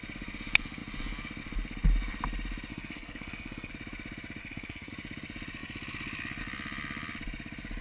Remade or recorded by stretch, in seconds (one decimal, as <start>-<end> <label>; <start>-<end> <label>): 0.0-2.7 recorded; 2.7-3.7 remade; 3.7-4.4 recorded; 4.4-4.9 remade; 4.9-7.8 recorded